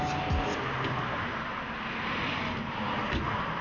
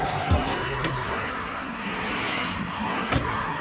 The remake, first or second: second